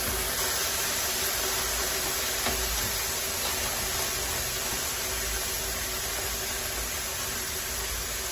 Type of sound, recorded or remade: recorded